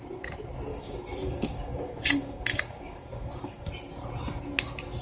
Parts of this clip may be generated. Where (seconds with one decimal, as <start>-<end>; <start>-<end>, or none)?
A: 0.7-3.7